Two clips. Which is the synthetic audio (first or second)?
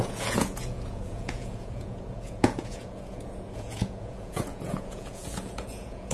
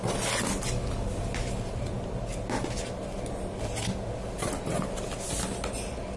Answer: first